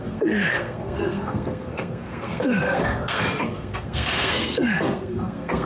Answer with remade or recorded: remade